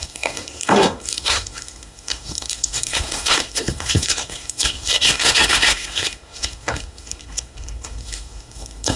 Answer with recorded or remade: remade